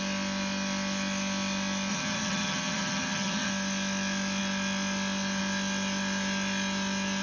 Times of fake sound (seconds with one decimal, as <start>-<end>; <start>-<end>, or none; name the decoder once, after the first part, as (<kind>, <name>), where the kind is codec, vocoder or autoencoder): 1.9-3.5 (vocoder, HiFi-GAN)